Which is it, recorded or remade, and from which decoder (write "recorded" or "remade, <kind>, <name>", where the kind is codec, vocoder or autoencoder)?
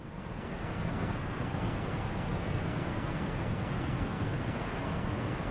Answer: remade, codec, SNAC